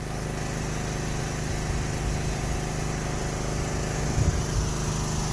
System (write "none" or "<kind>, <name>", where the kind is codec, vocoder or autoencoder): none